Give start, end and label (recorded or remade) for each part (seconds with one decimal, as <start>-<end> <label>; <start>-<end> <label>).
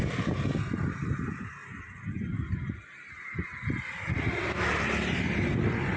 0.0-6.0 recorded